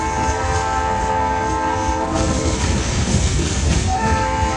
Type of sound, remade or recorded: remade